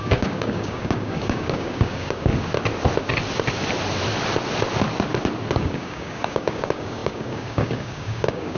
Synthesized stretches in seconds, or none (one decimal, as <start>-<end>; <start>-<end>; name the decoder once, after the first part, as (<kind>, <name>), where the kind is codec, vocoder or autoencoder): 0.0-2.3 (codec, DAC); 5.5-8.6